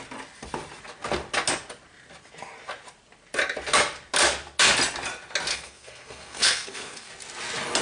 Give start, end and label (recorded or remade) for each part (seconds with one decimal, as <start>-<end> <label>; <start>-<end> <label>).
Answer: 0.0-5.5 recorded; 5.5-7.1 remade; 7.1-7.8 recorded